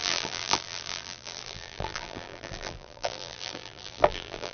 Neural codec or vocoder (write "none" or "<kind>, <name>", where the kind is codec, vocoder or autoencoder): vocoder, BigVGAN v2